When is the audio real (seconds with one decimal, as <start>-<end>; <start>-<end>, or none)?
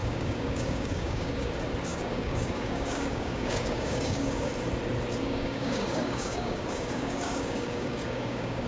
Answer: 1.5-1.9; 4.5-5.2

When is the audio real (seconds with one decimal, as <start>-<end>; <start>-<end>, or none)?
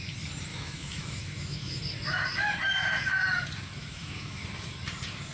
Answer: 0.0-0.5; 1.8-3.8; 4.4-5.3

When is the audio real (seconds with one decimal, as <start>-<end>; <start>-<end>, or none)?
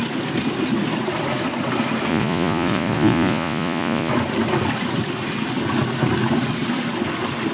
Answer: 0.0-2.1; 4.1-7.5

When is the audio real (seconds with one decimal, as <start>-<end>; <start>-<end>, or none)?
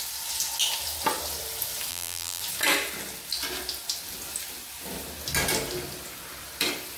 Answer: 0.0-1.9; 2.4-7.0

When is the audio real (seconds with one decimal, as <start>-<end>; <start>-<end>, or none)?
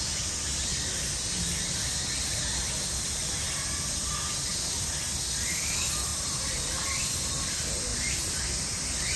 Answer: 0.0-0.7; 1.6-6.1; 6.8-7.9; 8.4-9.2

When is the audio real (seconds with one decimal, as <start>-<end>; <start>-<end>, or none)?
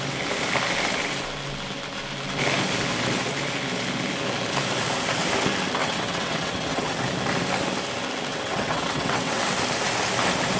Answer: 0.0-5.8; 7.0-8.3; 9.4-10.6